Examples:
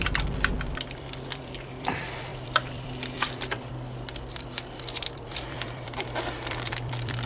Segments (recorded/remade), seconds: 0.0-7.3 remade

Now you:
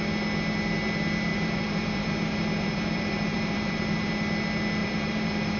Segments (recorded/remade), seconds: 0.0-1.3 recorded; 1.3-4.1 remade; 4.1-4.8 recorded; 4.8-5.6 remade

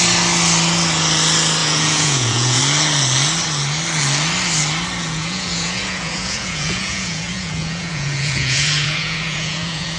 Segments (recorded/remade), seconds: 0.0-1.6 recorded; 1.6-2.6 remade; 2.6-5.0 recorded; 5.0-10.0 remade

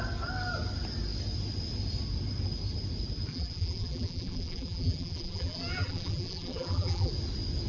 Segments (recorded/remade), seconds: 0.0-3.3 recorded; 3.3-7.1 remade; 7.1-7.7 recorded

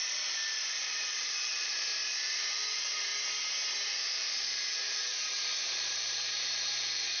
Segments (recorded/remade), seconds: 0.0-3.1 remade; 3.1-3.9 recorded; 3.9-7.2 remade

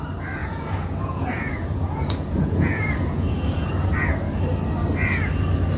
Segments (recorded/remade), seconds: 0.0-0.4 recorded; 0.4-3.7 remade; 3.7-5.8 recorded

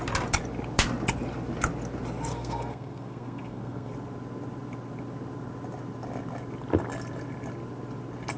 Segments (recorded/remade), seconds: 0.0-2.3 recorded; 2.3-3.9 remade; 3.9-8.4 recorded

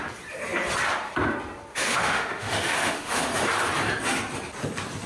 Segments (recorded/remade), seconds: 0.0-1.7 recorded; 1.7-3.3 remade; 3.3-5.1 recorded